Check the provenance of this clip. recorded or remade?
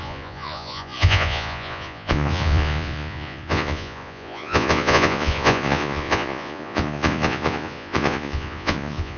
remade